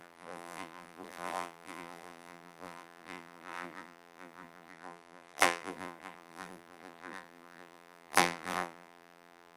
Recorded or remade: remade